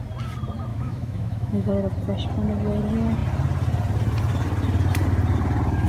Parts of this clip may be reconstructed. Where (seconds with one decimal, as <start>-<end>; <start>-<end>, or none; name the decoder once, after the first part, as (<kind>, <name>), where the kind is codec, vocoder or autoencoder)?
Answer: 0.7-1.7 (autoencoder, DAC-VAE)